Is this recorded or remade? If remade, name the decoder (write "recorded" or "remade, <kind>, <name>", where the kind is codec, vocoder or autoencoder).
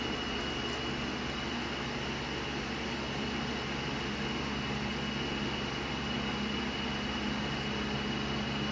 recorded